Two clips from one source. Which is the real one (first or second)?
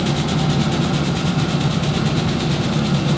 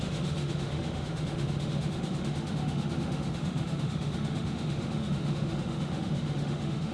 first